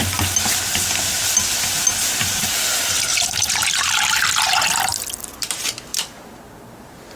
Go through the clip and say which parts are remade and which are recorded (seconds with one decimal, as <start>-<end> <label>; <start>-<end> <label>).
0.0-3.1 recorded; 3.1-4.3 remade; 4.3-5.9 recorded; 5.9-7.2 remade